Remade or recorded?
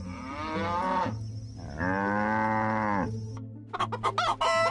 recorded